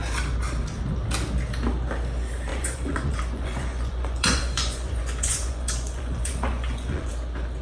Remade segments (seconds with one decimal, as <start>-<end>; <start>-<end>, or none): 2.5-7.1